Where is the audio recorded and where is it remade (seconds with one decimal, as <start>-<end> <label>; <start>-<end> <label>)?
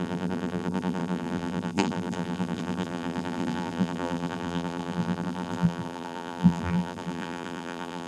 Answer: 0.0-8.1 remade